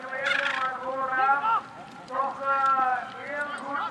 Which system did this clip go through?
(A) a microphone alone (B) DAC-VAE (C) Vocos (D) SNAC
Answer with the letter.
A